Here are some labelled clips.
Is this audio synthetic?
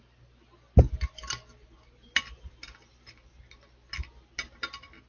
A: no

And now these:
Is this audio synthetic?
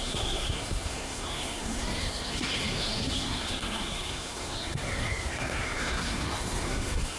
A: yes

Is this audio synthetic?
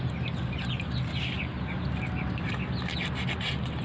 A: no